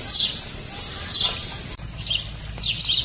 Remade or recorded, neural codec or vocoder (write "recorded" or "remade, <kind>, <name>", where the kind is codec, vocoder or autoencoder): recorded